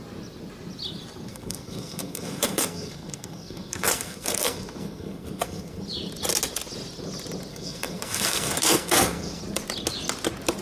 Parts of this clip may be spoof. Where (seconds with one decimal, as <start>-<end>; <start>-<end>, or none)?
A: 1.3-5.8; 7.5-9.4